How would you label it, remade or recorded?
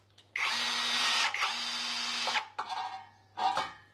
recorded